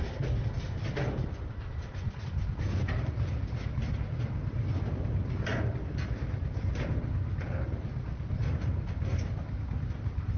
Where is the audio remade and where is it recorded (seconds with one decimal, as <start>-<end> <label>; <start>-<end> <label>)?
0.0-10.4 recorded